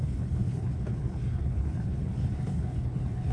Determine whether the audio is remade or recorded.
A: remade